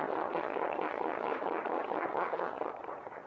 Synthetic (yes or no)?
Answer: yes